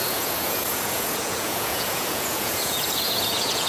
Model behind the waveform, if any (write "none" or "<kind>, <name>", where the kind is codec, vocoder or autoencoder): vocoder, Vocos